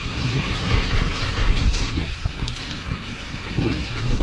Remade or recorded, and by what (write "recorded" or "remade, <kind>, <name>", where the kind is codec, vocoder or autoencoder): remade, codec, SNAC